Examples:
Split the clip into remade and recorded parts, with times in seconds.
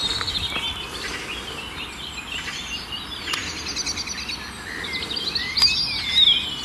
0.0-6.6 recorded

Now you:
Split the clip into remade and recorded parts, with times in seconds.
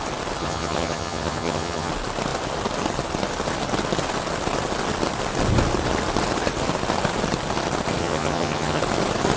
0.0-0.4 recorded; 0.4-1.9 remade; 1.9-8.0 recorded; 8.0-8.8 remade; 8.8-9.4 recorded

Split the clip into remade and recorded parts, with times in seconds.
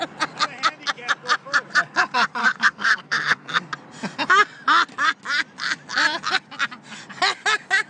0.0-2.4 recorded; 2.4-3.6 remade; 3.6-7.9 recorded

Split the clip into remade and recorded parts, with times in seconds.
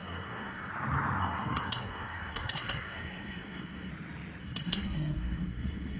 0.0-0.7 remade; 0.7-1.2 recorded; 1.2-3.9 remade; 3.9-4.4 recorded; 4.4-6.0 remade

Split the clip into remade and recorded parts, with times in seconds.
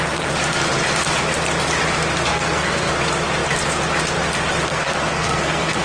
0.0-2.3 recorded; 2.3-2.9 remade; 2.9-4.7 recorded; 4.7-5.8 remade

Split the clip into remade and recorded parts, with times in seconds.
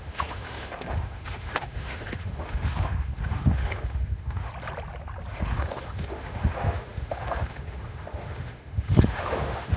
0.0-4.5 remade; 4.5-5.3 recorded; 5.3-9.8 remade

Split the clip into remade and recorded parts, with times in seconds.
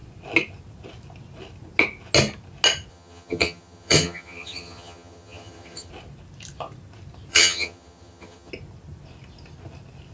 0.0-2.9 recorded; 2.9-5.9 remade; 5.9-7.3 recorded; 7.3-8.5 remade; 8.5-10.1 recorded